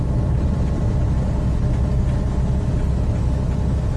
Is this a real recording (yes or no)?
yes